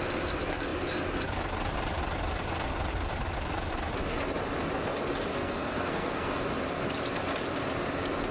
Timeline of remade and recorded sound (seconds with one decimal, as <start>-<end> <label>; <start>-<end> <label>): 0.0-5.3 recorded; 5.3-6.4 remade; 6.4-8.3 recorded